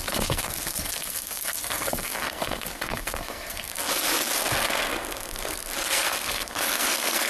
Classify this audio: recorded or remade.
remade